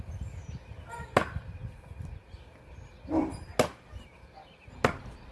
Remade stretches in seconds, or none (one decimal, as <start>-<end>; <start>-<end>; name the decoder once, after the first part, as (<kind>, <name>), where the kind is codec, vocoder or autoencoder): none